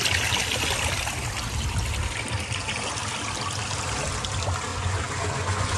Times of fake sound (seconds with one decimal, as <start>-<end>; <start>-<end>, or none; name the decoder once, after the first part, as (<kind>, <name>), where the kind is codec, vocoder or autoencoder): 4.7-5.8 (vocoder, Vocos)